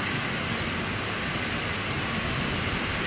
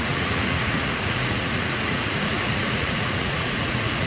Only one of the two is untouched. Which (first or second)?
first